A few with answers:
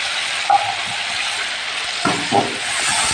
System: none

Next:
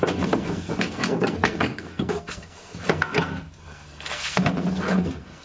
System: codec, SNAC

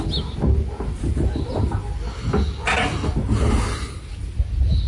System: none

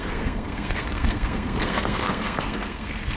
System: codec, SNAC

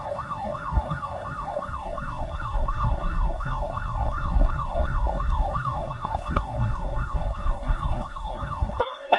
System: codec, SNAC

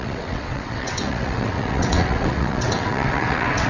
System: vocoder, WaveNeXt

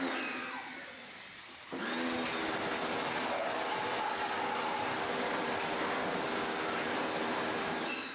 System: none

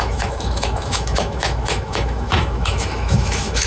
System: autoencoder, DAC-VAE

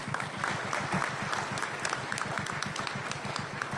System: none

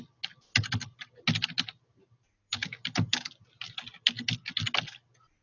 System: none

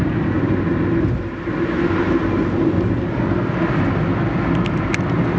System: none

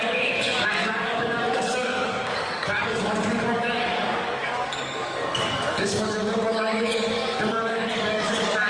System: codec, DAC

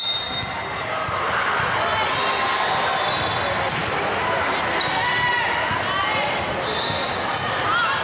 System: none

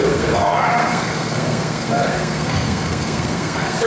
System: codec, SNAC